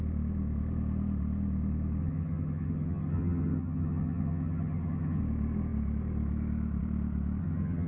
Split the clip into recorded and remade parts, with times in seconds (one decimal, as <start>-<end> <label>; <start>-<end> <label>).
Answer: 0.0-2.0 recorded; 2.0-5.2 remade; 5.2-7.4 recorded; 7.4-7.9 remade